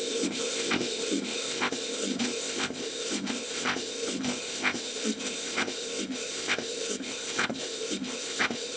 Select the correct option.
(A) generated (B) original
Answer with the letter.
A